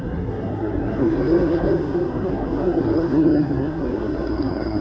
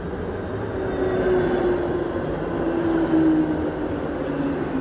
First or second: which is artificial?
first